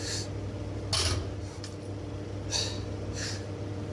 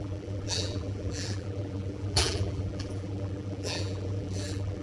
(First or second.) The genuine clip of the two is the first